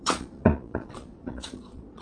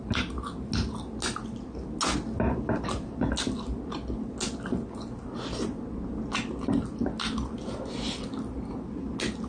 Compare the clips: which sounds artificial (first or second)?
first